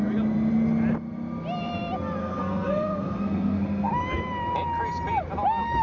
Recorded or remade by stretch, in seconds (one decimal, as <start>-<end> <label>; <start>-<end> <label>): 0.0-2.2 recorded; 2.2-3.9 remade; 3.9-5.8 recorded